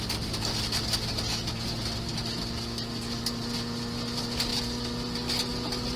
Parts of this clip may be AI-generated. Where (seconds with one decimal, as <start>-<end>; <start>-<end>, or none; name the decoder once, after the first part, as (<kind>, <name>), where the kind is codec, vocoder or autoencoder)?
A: none